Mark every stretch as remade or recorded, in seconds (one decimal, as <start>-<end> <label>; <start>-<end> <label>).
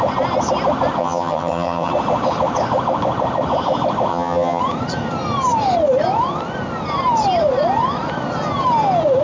0.0-1.0 recorded; 1.0-1.9 remade; 1.9-4.1 recorded; 4.1-4.6 remade; 4.6-9.2 recorded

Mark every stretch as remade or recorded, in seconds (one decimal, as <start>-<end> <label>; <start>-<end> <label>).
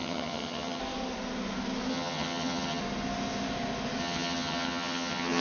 0.0-0.8 remade; 0.8-1.9 recorded; 1.9-2.8 remade; 2.8-4.0 recorded; 4.0-5.4 remade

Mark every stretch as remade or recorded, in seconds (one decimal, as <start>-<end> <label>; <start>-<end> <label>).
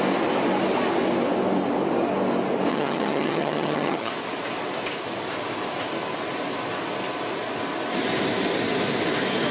0.0-2.7 recorded; 2.7-4.1 remade; 4.1-9.5 recorded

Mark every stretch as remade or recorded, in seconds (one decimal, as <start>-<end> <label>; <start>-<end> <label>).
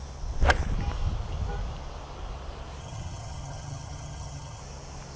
0.0-2.8 recorded; 2.8-4.6 remade; 4.6-5.2 recorded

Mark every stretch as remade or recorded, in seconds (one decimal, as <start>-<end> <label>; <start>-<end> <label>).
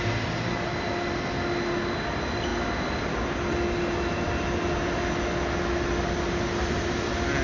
0.0-7.4 recorded